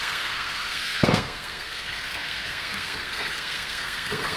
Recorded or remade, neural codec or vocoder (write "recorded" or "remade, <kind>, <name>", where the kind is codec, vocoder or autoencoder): remade, codec, SNAC